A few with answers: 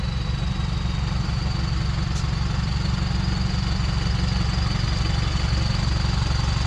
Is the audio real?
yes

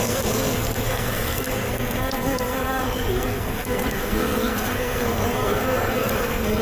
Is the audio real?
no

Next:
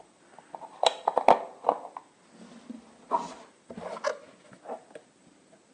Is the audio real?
yes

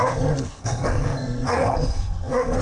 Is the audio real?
no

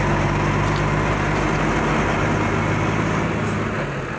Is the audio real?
yes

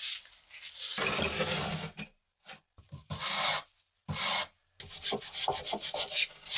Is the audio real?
yes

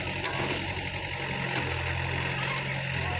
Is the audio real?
yes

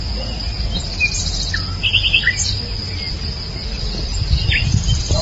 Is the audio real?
yes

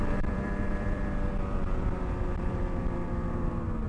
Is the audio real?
no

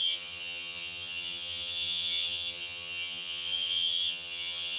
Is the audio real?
no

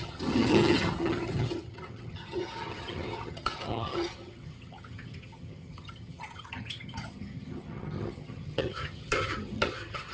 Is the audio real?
no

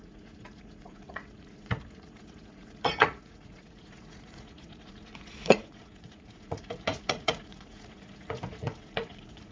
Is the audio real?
no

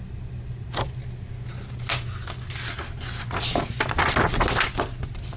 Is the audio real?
yes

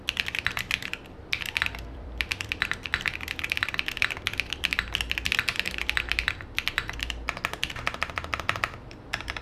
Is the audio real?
no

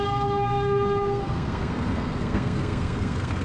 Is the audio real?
no